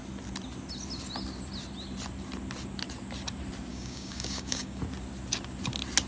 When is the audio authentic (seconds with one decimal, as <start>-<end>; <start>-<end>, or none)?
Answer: 0.0-3.7; 4.8-6.1